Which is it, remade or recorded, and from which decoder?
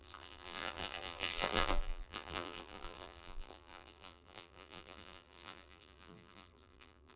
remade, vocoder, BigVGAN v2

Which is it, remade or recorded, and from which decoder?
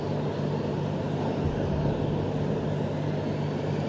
recorded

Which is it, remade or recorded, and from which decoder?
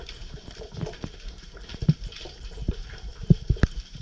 remade, vocoder, BigVGAN v2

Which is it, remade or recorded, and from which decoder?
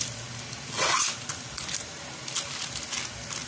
recorded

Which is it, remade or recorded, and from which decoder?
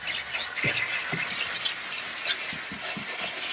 recorded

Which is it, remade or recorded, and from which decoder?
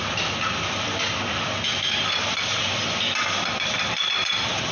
remade, vocoder, BigVGAN v2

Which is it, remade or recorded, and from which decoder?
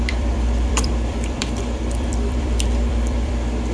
remade, vocoder, BigVGAN v2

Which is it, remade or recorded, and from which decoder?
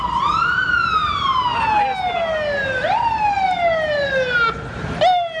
recorded